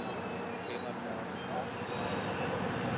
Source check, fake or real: real